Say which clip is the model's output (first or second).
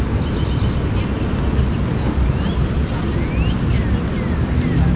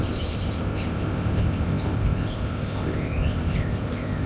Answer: second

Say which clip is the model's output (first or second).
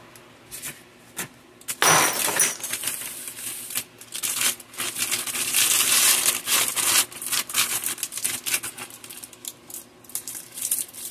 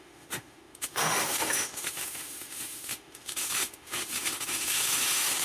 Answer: second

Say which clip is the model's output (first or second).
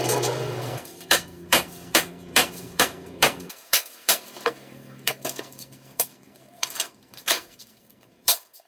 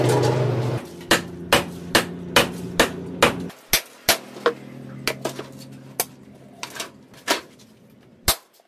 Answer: first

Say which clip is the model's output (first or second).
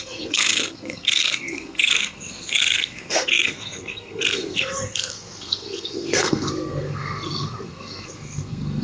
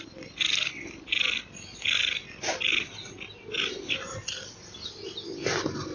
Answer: first